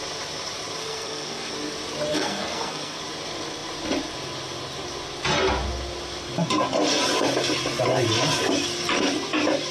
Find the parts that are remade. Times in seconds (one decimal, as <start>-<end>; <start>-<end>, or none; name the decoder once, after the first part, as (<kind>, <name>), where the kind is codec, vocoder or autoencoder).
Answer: 0.8-1.5 (codec, SNAC); 2.1-3.0